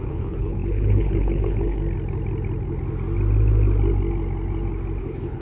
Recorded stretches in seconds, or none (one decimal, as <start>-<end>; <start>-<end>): 1.8-5.0